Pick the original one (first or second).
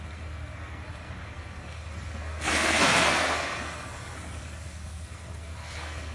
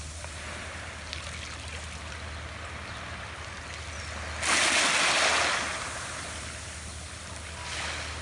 second